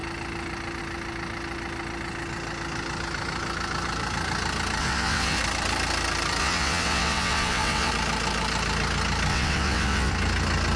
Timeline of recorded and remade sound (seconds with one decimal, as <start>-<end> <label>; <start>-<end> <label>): 0.0-4.8 recorded; 4.8-5.4 remade; 5.4-6.4 recorded; 6.4-7.9 remade; 7.9-9.3 recorded; 9.3-10.1 remade; 10.1-10.8 recorded